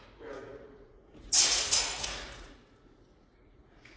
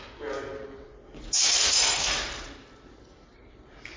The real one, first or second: second